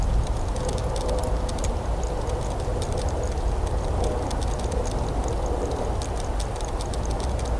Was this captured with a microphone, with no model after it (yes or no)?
yes